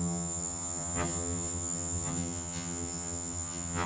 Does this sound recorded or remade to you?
remade